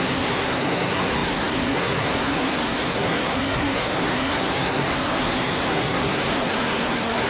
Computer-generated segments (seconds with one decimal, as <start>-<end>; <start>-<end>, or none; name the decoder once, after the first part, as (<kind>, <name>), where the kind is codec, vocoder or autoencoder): 0.0-7.3 (codec, SNAC)